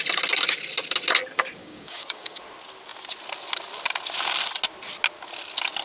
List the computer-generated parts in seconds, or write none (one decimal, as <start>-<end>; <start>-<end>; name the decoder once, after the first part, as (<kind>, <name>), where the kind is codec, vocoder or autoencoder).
1.6-2.4 (codec, DAC)